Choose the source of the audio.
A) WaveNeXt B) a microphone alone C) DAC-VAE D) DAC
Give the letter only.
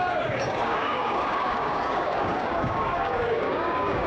D